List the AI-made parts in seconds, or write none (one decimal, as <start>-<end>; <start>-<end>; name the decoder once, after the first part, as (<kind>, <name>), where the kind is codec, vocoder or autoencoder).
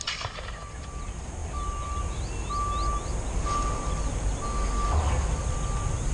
none